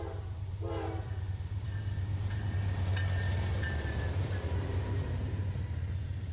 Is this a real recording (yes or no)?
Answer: no